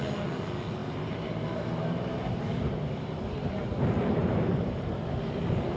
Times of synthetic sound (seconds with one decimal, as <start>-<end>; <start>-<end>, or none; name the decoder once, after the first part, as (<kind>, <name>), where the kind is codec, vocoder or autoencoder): 0.8-3.8 (vocoder, BigVGAN v2); 4.2-5.8